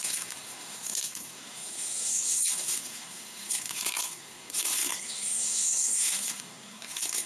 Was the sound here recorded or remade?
remade